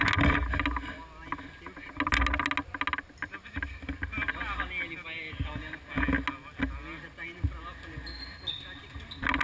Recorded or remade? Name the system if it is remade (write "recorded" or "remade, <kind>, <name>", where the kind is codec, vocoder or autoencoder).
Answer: recorded